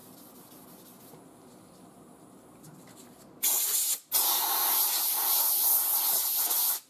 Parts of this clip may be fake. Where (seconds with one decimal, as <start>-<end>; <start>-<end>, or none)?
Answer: none